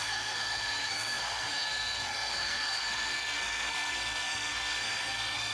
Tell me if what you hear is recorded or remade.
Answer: remade